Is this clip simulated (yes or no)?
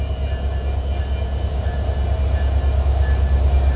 no